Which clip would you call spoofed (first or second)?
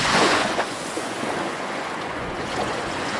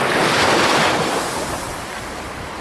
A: first